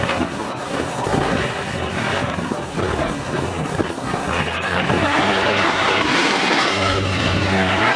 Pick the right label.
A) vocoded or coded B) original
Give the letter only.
A